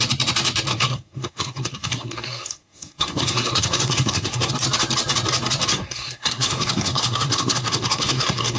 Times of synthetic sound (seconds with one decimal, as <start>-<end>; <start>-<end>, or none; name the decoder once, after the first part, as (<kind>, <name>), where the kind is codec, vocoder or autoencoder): 0.7-4.5 (codec, SNAC); 5.7-8.6